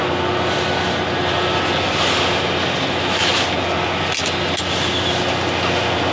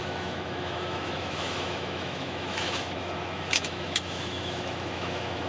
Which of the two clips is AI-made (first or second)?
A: second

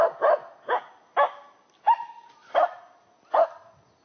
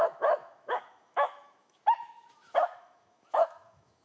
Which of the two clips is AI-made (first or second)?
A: second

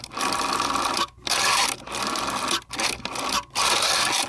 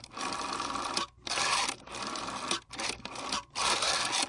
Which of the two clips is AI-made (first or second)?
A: second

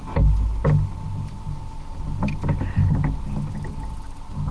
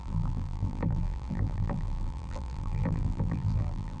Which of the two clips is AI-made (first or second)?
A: second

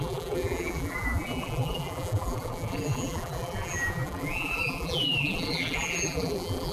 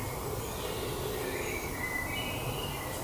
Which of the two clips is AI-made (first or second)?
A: first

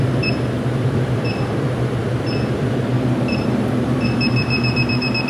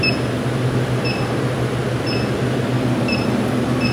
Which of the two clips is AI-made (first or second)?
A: first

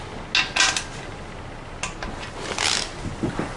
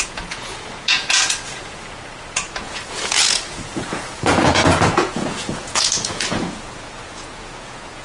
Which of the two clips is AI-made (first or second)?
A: second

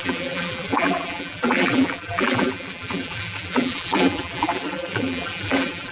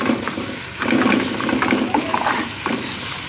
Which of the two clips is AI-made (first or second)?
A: first